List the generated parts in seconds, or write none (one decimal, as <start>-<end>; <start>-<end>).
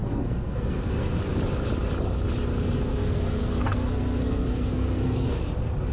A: 0.0-1.2; 3.0-5.4